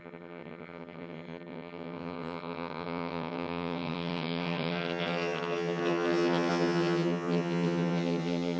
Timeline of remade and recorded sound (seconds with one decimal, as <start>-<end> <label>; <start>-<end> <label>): 0.0-8.6 remade